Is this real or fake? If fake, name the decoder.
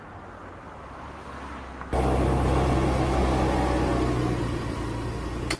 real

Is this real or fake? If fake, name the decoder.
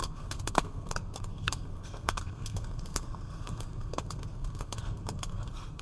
fake, codec, SNAC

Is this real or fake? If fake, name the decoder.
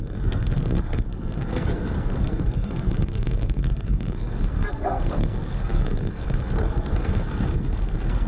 fake, codec, SNAC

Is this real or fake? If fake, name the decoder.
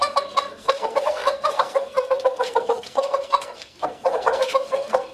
fake, codec, SNAC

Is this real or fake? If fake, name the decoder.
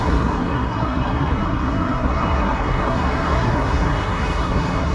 fake, codec, SNAC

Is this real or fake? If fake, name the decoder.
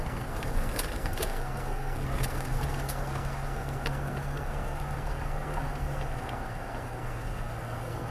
fake, codec, SNAC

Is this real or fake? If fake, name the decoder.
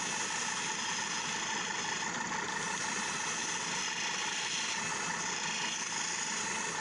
real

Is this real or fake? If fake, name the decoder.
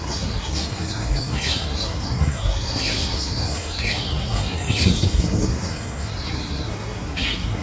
fake, codec, SNAC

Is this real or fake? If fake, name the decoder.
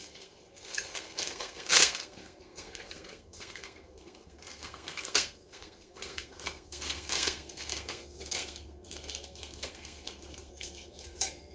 fake, codec, SNAC